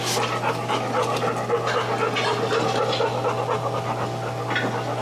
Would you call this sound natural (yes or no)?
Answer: yes